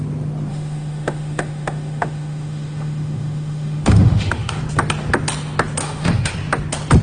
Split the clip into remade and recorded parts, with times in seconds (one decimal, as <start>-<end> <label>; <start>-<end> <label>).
0.0-0.5 recorded; 0.5-4.6 remade; 4.6-5.8 recorded; 5.8-6.3 remade; 6.3-7.0 recorded